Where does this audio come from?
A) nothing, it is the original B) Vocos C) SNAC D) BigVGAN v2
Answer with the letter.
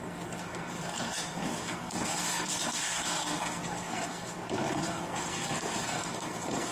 C